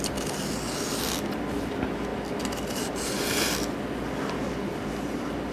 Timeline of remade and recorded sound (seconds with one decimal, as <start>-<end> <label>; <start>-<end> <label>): 0.0-5.5 recorded